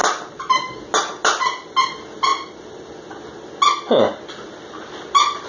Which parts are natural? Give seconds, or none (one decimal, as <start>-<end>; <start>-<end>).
0.0-5.5